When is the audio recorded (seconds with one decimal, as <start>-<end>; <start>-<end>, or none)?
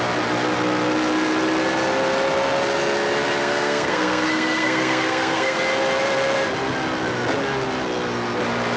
0.0-3.4; 5.6-8.8